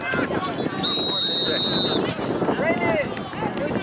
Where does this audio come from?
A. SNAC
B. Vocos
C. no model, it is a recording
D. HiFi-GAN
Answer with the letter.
C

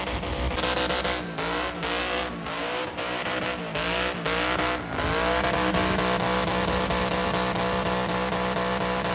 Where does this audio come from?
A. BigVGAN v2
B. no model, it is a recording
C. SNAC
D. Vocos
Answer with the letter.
B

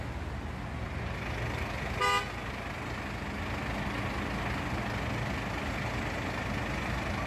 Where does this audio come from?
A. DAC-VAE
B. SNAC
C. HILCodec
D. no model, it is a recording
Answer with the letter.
D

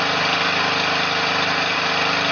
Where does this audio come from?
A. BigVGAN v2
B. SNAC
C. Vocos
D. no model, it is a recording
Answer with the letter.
D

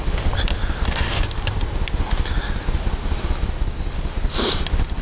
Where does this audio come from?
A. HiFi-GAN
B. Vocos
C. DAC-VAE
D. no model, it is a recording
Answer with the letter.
D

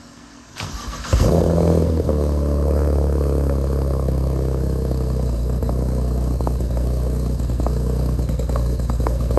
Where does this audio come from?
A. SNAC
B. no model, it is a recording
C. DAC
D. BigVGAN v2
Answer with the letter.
A